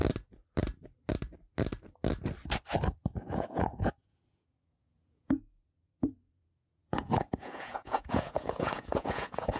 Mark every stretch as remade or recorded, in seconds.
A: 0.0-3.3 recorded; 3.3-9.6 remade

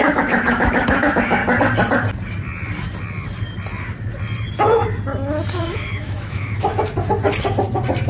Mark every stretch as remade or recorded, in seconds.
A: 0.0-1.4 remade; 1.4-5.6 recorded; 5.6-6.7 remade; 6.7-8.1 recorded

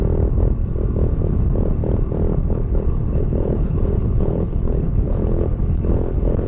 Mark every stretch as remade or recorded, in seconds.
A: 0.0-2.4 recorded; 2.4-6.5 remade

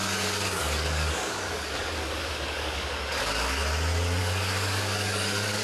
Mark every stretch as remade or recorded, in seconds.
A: 0.0-3.6 remade; 3.6-4.2 recorded; 4.2-5.6 remade

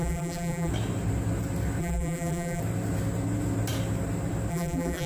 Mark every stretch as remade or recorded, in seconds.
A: 0.0-0.7 remade; 0.7-1.8 recorded; 1.8-2.6 remade; 2.6-4.5 recorded; 4.5-5.1 remade